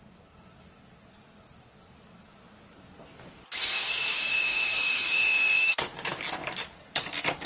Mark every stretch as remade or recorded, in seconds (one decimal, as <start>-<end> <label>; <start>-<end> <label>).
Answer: 0.0-3.6 recorded; 3.6-5.8 remade; 5.8-7.5 recorded